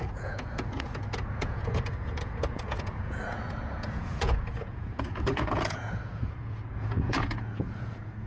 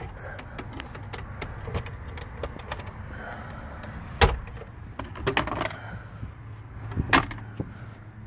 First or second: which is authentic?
second